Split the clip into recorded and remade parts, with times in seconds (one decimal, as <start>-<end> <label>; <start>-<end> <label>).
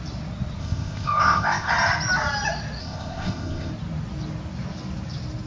0.0-0.6 recorded; 0.6-1.7 remade; 1.7-2.8 recorded; 2.8-3.7 remade; 3.7-5.5 recorded